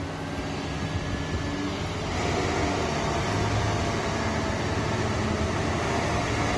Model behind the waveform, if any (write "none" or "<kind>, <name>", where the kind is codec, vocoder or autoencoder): none